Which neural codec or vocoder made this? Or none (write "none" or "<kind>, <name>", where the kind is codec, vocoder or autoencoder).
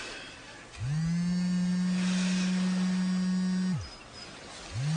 none